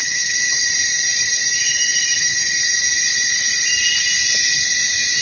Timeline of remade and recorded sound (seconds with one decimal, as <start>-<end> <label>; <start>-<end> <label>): 0.0-0.7 remade; 0.7-5.2 recorded